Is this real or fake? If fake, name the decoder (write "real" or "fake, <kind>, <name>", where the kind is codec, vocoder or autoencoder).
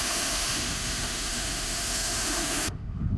fake, autoencoder, DAC-VAE